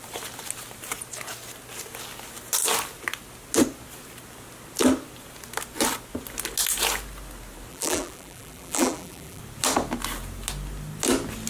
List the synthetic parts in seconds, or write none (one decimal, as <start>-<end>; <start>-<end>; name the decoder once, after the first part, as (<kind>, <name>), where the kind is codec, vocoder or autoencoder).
7.7-9.4 (vocoder, BigVGAN v2)